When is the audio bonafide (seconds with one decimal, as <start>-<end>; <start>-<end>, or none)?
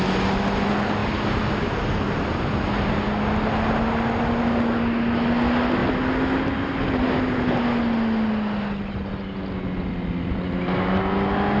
0.0-11.6